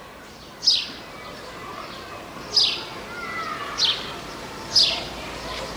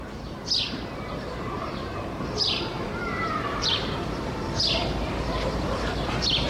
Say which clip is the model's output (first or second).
second